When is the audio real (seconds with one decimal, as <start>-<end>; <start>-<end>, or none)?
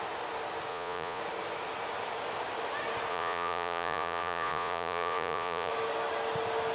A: 0.0-0.7; 1.2-3.1; 5.7-6.7